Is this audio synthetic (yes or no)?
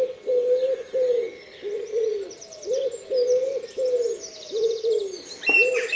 no